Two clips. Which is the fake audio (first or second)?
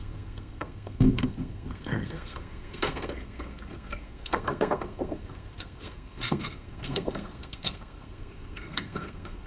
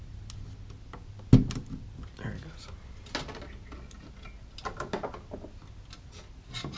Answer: first